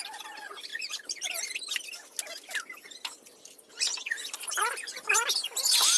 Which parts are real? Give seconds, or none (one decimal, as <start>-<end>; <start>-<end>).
0.0-6.0